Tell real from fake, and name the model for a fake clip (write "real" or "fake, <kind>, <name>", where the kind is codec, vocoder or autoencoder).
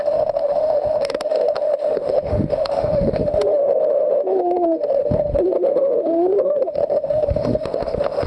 fake, autoencoder, DAC-VAE